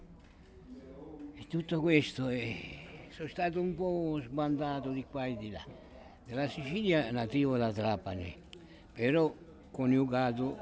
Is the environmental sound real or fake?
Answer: real